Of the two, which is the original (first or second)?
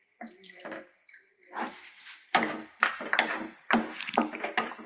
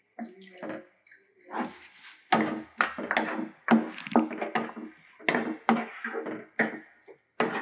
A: second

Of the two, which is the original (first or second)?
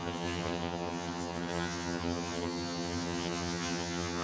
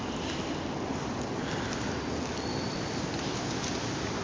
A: second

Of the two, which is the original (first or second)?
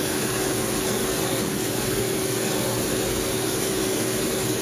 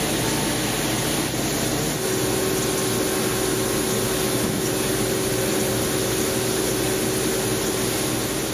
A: second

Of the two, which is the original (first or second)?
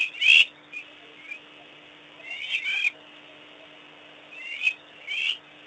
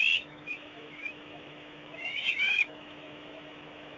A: first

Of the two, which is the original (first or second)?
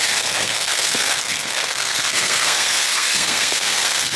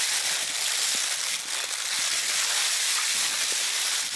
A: second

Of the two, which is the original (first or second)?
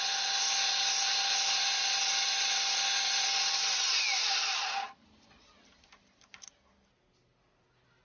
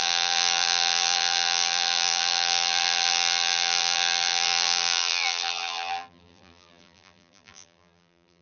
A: first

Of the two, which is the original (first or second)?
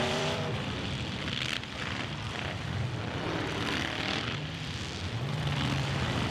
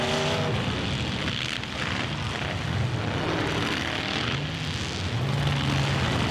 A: second